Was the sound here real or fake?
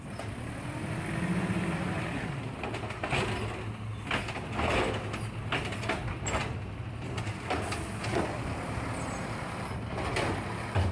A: real